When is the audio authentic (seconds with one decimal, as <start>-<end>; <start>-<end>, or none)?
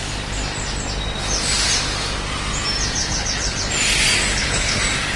0.0-3.0; 3.6-4.3; 4.8-5.2